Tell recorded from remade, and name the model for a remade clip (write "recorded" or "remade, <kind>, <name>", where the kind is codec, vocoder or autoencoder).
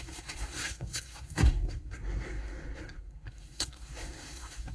remade, codec, SNAC